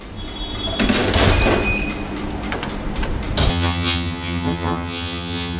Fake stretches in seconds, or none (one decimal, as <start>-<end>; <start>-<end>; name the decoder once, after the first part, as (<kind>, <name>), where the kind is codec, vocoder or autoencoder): 3.5-5.6 (vocoder, HiFi-GAN)